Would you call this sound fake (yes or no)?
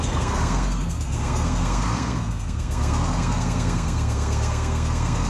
yes